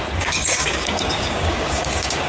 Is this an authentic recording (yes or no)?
no